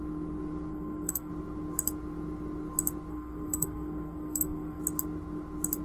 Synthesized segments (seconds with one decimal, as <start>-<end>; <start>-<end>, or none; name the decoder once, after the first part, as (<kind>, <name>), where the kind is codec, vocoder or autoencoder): 0.7-1.3 (codec, SNAC); 3.1-4.8